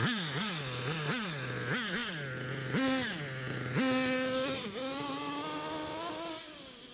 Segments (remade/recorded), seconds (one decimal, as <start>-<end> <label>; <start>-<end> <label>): 0.0-6.9 recorded